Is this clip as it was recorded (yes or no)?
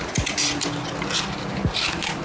yes